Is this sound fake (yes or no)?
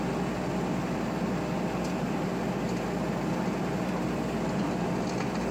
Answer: no